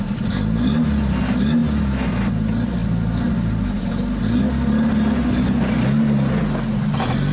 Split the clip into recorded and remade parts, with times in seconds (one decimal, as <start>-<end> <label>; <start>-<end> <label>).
0.0-7.3 recorded